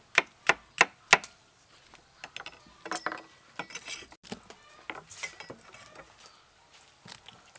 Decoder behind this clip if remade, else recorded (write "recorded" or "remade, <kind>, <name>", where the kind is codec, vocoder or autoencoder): recorded